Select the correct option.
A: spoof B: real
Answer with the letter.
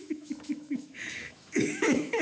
A